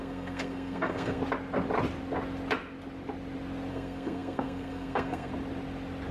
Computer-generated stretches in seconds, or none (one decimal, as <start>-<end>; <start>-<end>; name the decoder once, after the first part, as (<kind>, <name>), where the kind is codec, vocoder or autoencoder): 0.0-1.2 (codec, SNAC); 3.7-5.3